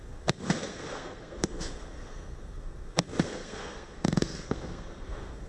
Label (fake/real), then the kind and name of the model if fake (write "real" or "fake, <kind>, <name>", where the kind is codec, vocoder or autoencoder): fake, codec, SNAC